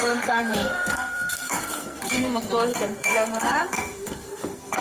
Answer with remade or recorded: remade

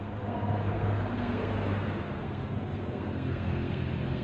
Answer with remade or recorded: remade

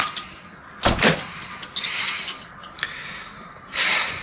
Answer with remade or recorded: recorded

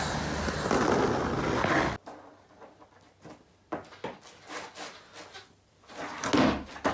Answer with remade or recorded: recorded